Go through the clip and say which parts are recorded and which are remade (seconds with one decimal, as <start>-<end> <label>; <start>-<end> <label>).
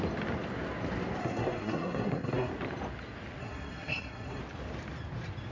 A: 0.0-1.2 recorded; 1.2-2.5 remade; 2.5-3.4 recorded; 3.4-4.4 remade; 4.4-5.5 recorded